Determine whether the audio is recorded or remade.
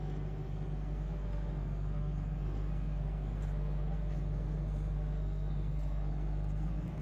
remade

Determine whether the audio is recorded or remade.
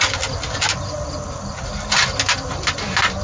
recorded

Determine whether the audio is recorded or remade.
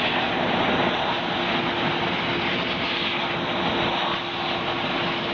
recorded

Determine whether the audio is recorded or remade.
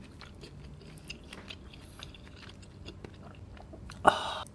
recorded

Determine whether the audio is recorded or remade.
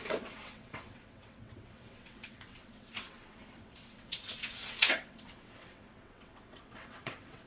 remade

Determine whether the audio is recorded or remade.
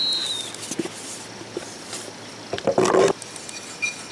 recorded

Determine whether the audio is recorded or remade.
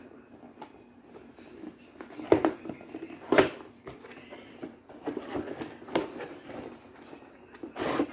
recorded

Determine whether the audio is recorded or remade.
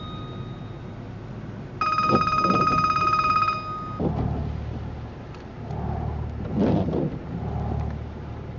recorded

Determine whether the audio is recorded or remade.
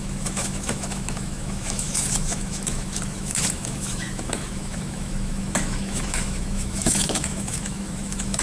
remade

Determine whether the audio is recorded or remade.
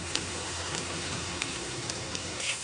remade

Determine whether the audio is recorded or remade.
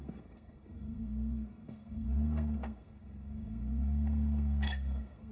remade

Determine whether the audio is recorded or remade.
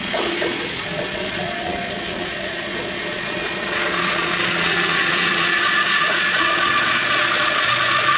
remade